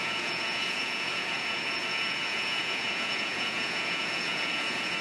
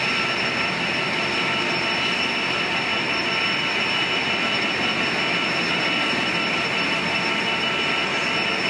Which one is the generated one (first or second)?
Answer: first